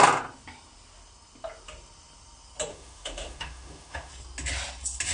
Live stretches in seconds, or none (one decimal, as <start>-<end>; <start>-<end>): 0.0-2.7; 4.1-5.1

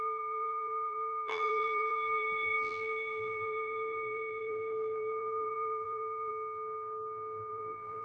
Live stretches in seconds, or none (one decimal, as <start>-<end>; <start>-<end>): 6.3-7.5

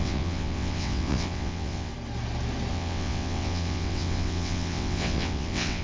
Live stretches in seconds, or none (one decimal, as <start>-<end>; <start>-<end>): 1.9-2.7

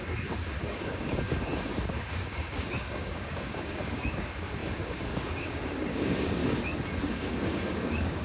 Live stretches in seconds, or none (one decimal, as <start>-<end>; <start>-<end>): 6.4-7.0

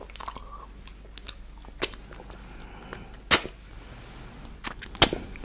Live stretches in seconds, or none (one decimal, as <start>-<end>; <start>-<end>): 0.0-5.4

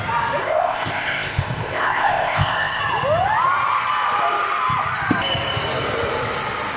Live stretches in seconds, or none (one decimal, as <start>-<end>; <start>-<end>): 0.0-0.4; 2.8-6.8